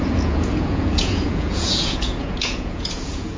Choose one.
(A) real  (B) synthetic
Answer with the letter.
B